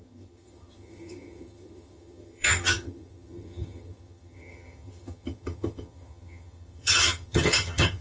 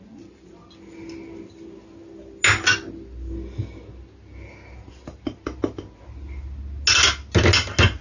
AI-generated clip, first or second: first